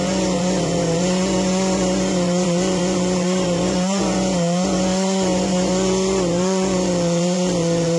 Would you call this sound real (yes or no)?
no